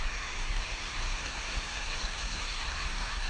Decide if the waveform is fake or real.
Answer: fake